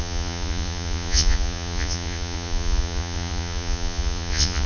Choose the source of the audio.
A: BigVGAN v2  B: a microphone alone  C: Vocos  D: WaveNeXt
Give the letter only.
C